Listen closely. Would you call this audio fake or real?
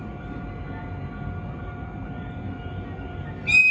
real